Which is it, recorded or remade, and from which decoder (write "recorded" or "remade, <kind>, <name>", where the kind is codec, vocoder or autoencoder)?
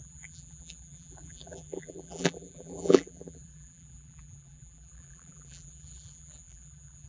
remade, vocoder, BigVGAN v2